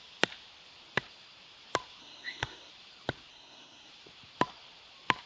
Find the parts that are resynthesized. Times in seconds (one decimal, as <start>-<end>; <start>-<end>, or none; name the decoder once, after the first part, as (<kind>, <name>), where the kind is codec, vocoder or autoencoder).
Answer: 2.0-2.7 (codec, SNAC); 3.3-3.9